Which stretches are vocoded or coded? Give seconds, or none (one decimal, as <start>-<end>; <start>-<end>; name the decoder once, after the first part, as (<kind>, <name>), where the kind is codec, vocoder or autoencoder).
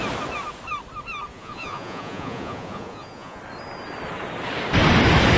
1.3-3.4 (vocoder, Vocos)